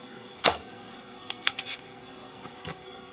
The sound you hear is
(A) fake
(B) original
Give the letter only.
A